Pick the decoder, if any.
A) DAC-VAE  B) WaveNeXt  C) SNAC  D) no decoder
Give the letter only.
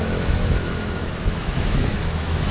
A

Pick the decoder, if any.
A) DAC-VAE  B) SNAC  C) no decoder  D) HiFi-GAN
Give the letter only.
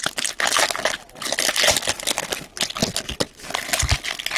C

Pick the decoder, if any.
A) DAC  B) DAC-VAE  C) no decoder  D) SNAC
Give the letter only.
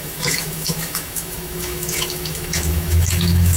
B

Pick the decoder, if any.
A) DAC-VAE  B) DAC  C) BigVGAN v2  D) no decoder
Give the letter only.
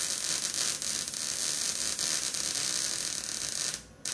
D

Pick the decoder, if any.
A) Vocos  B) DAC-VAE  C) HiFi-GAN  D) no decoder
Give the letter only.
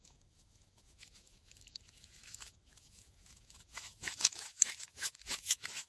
B